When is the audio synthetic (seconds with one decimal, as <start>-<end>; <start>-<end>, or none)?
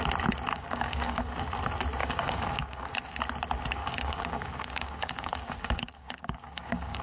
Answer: 0.5-1.4; 2.0-3.2; 3.8-7.0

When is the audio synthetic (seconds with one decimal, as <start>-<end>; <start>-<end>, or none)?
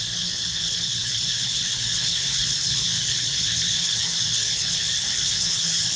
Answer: 0.0-6.0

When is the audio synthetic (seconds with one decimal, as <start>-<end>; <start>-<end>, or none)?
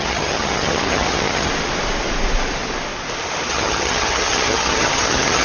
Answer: 0.0-1.5; 3.5-5.4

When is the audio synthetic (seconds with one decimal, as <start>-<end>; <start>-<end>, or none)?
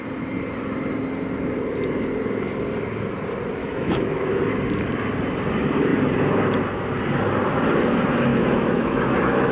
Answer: 3.6-4.4; 8.3-9.5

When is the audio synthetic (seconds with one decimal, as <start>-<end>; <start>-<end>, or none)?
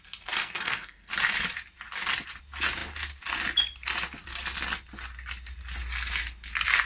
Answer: 0.4-1.1